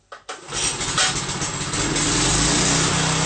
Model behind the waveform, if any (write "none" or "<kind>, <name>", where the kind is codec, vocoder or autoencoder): none